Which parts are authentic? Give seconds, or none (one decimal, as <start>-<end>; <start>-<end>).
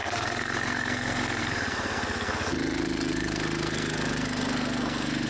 none